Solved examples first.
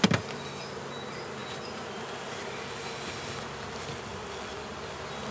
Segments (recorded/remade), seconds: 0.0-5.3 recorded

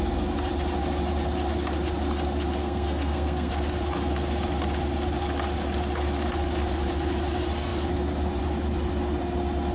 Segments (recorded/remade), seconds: 0.0-2.6 recorded; 2.6-3.5 remade; 3.5-9.7 recorded